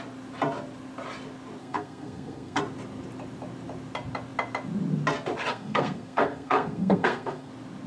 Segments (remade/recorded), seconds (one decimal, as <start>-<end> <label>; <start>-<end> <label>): 0.0-1.6 recorded; 1.6-2.6 remade; 2.6-5.5 recorded; 5.5-7.5 remade; 7.5-7.9 recorded